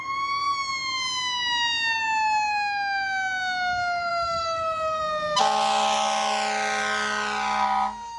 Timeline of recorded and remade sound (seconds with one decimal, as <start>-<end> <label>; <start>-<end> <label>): 0.0-4.1 recorded; 4.1-5.0 remade; 5.0-8.2 recorded